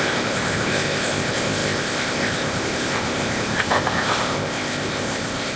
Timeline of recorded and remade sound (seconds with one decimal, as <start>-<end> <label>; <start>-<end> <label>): 0.0-5.6 remade